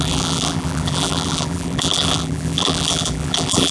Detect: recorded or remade remade